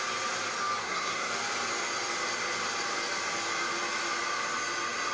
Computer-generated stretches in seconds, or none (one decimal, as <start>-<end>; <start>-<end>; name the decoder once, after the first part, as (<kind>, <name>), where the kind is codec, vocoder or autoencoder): 0.8-1.3 (codec, SNAC)